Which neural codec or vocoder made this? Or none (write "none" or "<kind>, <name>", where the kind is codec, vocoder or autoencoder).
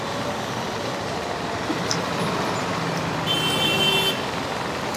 none